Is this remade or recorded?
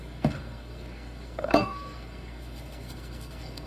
remade